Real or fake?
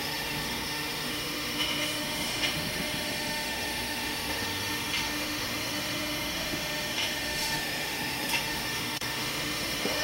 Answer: fake